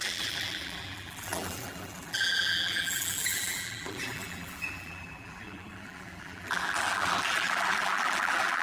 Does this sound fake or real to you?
fake